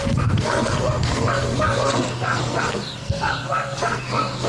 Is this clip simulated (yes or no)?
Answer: yes